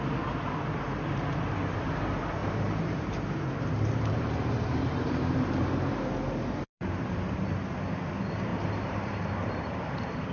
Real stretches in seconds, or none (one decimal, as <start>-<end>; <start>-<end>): 0.0-2.4; 7.4-8.5